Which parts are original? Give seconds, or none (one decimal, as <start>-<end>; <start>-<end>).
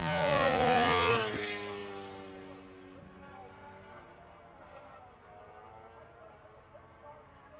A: 1.1-7.6